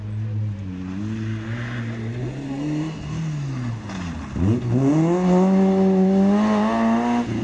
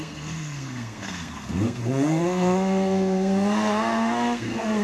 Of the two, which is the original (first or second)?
first